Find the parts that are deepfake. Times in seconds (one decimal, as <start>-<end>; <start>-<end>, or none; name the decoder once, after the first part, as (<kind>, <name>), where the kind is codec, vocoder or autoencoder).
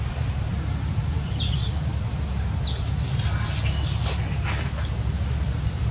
0.0-0.5 (vocoder, BigVGAN v2); 1.0-1.9; 5.4-5.9